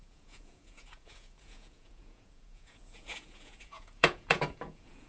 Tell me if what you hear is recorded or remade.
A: remade